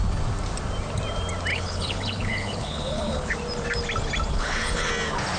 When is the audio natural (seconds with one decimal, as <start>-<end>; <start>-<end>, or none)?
0.0-1.5; 3.3-4.3; 4.9-5.4